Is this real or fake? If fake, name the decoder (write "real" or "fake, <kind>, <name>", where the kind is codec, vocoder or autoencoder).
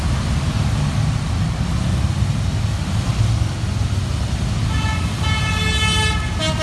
real